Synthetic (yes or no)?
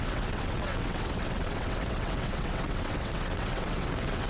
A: yes